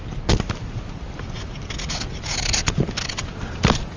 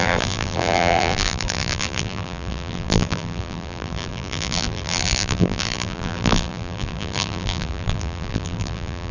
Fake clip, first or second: second